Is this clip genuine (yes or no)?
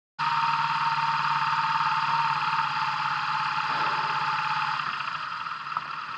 yes